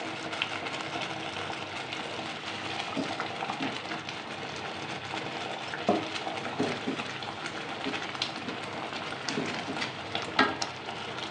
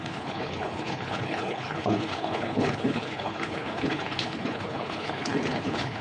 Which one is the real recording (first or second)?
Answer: first